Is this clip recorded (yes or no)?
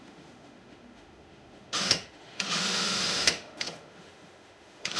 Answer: no